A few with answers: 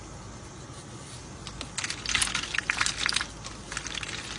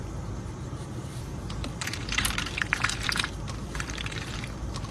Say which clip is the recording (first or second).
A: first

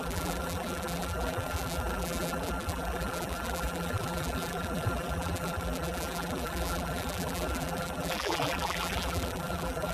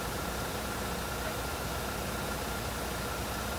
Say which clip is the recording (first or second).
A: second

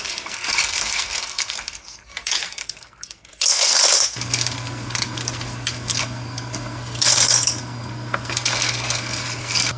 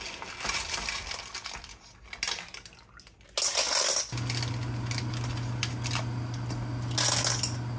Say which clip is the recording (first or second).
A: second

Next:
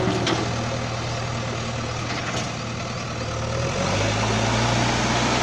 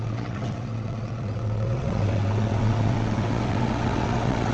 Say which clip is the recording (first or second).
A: first